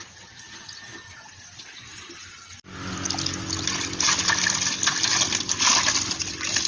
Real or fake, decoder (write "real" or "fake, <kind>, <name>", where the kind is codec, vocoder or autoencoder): real